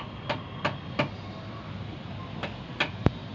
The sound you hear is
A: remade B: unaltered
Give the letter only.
B